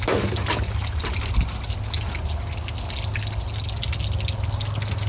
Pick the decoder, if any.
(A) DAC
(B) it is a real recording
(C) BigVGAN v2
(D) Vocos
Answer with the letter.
B